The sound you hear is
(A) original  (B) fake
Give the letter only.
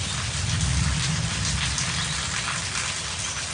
A